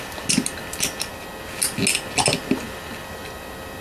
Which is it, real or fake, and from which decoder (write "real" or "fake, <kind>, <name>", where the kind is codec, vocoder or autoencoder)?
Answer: real